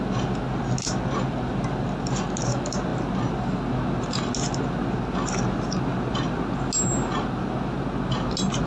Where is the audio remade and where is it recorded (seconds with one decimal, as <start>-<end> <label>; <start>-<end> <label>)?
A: 0.0-8.7 recorded